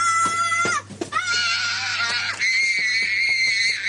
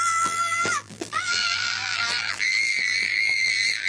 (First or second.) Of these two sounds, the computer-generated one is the second